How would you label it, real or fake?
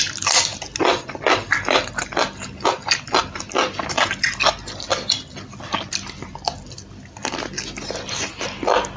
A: real